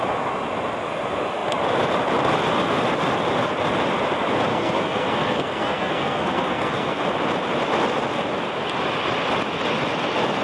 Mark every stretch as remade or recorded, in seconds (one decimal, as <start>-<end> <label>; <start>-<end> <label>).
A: 0.0-4.5 recorded; 4.5-7.0 remade; 7.0-10.4 recorded